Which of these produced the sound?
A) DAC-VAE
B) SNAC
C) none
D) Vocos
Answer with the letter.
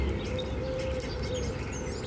C